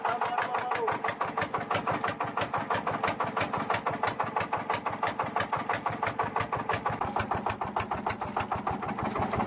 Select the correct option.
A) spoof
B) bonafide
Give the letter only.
B